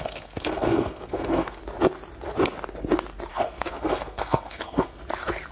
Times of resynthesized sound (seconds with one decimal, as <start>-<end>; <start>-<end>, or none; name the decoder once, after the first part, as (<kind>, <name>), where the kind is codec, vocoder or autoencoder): 0.0-1.6 (codec, SNAC); 3.3-5.0